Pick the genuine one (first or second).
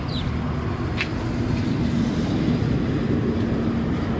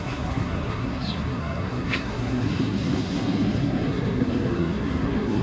first